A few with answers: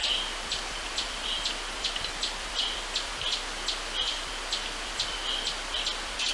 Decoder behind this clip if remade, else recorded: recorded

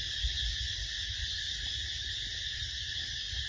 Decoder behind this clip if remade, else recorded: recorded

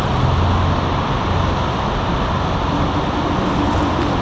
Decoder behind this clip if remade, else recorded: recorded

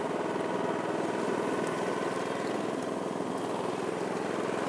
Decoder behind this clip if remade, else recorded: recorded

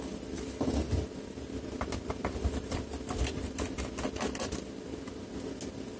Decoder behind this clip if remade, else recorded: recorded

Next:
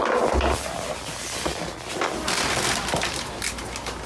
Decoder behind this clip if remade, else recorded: recorded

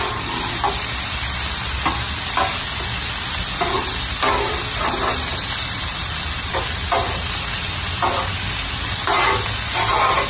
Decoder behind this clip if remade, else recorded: recorded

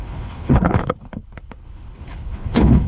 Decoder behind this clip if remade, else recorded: remade, codec, HILCodec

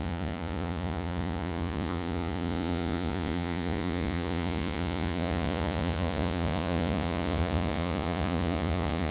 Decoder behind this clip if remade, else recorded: remade, vocoder, Vocos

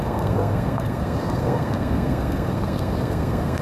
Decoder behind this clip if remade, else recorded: remade, codec, SNAC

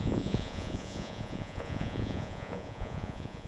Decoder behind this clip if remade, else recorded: remade, vocoder, Vocos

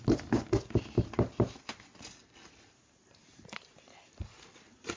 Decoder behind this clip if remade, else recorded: recorded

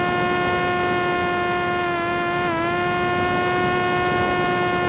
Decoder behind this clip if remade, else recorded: recorded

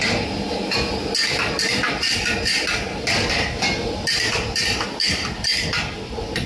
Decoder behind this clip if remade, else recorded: recorded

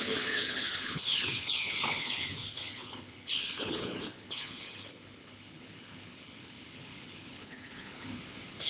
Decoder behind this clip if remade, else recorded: remade, codec, HILCodec